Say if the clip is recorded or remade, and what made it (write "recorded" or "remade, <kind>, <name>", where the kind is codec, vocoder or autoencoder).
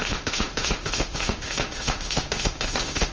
remade, autoencoder, DAC-VAE